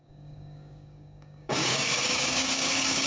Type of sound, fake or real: fake